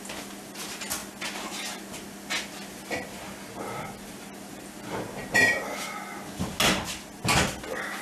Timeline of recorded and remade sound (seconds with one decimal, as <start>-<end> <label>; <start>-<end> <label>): 0.0-8.0 recorded

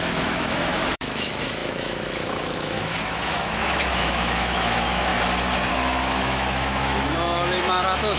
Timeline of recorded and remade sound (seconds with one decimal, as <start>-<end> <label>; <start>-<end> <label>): 0.0-5.1 remade; 5.1-5.7 recorded; 5.7-8.2 remade

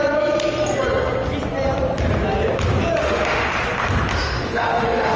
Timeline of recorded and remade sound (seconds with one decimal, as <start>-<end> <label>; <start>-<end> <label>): 0.0-3.0 recorded; 3.0-3.5 remade; 3.5-4.1 recorded; 4.1-5.2 remade

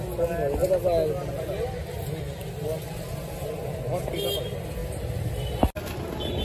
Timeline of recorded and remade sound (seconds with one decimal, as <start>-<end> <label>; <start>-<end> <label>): 0.0-6.4 recorded

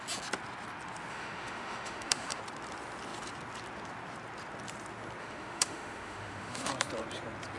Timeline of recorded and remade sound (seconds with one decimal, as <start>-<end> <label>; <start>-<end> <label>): 0.0-1.1 recorded; 1.1-2.4 remade; 2.4-5.2 recorded; 5.2-6.7 remade; 6.7-7.6 recorded